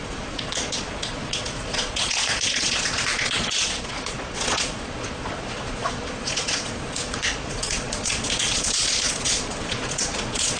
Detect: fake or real fake